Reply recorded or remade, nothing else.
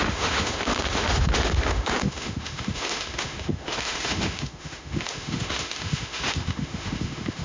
remade